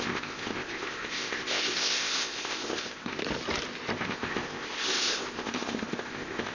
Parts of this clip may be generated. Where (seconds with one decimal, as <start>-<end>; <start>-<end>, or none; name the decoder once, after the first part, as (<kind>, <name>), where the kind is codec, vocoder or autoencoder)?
0.0-3.2 (codec, ZipCodec); 3.9-6.5